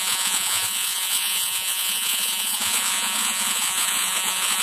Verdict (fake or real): fake